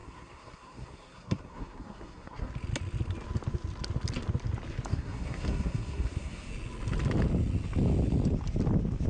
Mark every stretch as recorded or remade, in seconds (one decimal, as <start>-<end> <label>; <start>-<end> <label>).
0.0-2.5 remade; 2.5-4.9 recorded; 4.9-6.5 remade; 6.5-9.1 recorded